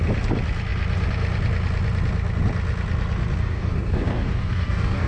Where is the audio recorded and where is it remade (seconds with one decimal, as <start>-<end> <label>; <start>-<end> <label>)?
0.0-3.4 recorded; 3.4-5.1 remade